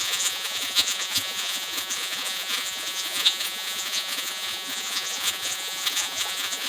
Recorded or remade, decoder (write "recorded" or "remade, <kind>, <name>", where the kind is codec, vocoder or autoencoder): remade, vocoder, Vocos